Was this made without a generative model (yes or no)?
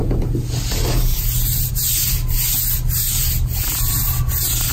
yes